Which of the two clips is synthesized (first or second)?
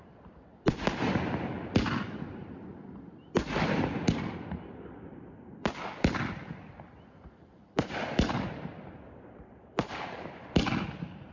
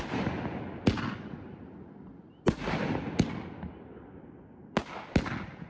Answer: first